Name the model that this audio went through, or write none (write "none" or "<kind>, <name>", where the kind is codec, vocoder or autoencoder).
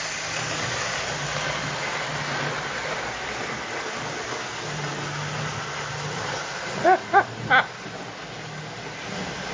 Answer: none